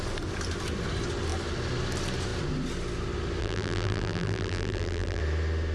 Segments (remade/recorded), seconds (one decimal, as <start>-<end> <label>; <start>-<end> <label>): 0.0-3.4 recorded; 3.4-5.2 remade; 5.2-5.7 recorded